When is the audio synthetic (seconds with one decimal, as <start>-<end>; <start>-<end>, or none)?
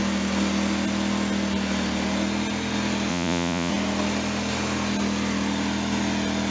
3.1-3.7